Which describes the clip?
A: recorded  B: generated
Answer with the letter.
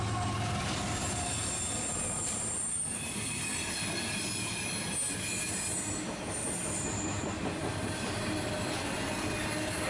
A